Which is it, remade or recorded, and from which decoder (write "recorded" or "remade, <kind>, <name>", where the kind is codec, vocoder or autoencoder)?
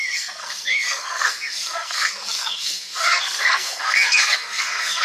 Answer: remade, codec, SNAC